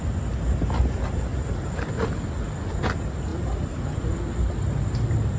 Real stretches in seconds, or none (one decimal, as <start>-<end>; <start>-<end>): 0.0-1.3; 1.9-3.3; 4.2-5.4